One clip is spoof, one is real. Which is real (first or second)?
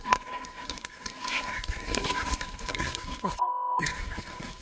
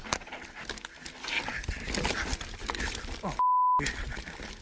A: second